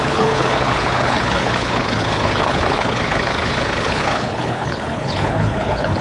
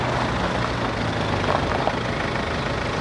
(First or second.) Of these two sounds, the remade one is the first